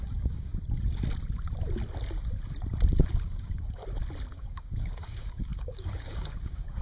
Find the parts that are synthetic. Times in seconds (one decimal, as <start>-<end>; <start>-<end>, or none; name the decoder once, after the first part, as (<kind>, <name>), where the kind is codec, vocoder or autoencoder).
0.0-0.5 (codec, DAC); 3.3-3.8; 4.3-6.8